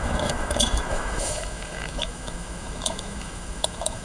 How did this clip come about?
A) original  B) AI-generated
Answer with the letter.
B